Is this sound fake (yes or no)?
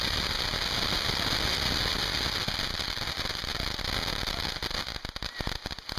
no